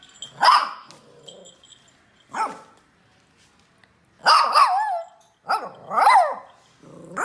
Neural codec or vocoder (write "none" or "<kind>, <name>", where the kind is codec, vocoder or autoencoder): none